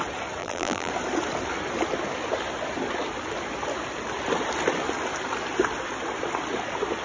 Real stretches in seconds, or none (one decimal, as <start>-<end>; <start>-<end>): 0.0-0.4; 0.9-7.0